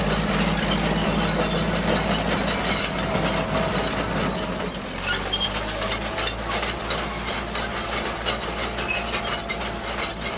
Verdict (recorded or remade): recorded